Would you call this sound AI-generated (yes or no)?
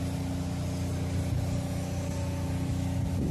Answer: no